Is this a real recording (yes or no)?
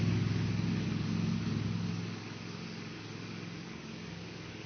no